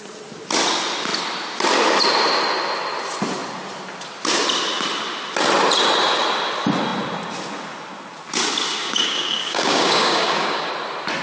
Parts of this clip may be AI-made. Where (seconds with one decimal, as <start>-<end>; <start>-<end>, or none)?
8.8-10.7